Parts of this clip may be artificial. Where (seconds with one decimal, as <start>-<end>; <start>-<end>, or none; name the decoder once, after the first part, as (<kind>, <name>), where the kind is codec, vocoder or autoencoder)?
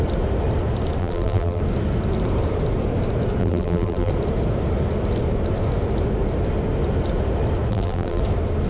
1.0-1.6 (vocoder, BigVGAN v2); 3.4-4.1; 7.7-8.2